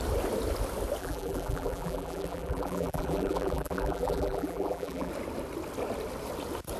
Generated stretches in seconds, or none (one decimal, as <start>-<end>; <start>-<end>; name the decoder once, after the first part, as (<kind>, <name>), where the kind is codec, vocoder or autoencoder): 1.0-5.1 (vocoder, BigVGAN v2)